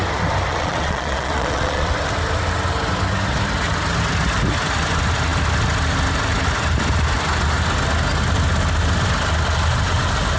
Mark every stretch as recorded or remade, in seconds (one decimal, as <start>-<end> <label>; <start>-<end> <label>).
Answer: 0.0-0.5 recorded; 0.5-1.9 remade; 1.9-10.4 recorded